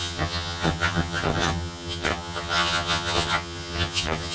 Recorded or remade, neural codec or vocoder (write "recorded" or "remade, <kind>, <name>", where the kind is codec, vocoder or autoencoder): remade, vocoder, HiFi-GAN